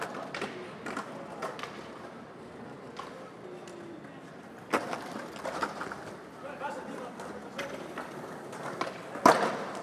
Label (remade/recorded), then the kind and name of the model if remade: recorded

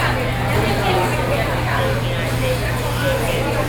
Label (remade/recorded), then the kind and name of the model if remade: recorded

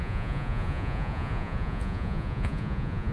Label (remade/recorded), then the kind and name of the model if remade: remade, vocoder, Vocos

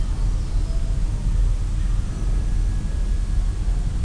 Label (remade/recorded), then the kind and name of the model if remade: recorded